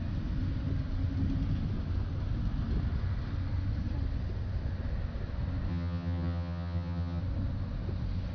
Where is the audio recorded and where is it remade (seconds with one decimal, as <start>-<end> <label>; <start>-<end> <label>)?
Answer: 0.0-5.7 recorded; 5.7-7.2 remade; 7.2-8.3 recorded